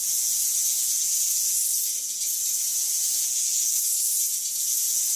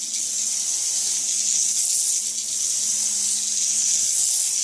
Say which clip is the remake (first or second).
first